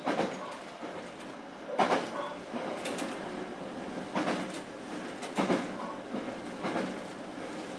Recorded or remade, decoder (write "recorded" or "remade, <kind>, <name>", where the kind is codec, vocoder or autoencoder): recorded